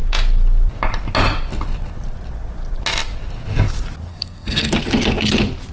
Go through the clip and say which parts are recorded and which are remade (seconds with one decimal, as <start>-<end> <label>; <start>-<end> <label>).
0.0-4.1 recorded; 4.1-4.7 remade; 4.7-5.7 recorded

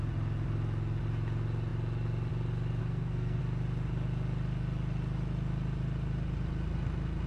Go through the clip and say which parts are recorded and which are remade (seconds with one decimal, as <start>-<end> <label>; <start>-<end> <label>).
0.0-2.8 recorded; 2.8-3.4 remade; 3.4-7.3 recorded

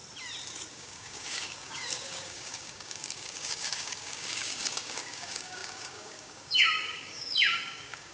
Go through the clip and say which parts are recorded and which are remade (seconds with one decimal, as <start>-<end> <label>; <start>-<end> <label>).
0.0-0.7 recorded; 0.7-8.1 remade

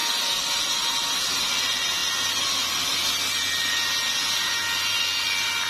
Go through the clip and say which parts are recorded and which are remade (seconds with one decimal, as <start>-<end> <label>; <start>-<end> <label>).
0.0-5.7 recorded

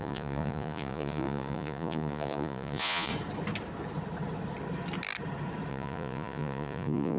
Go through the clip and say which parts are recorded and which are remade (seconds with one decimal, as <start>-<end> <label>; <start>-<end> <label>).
0.0-3.1 remade; 3.1-5.7 recorded; 5.7-7.2 remade